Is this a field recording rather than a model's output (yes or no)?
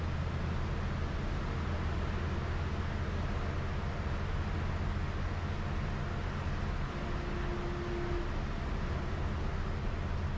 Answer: yes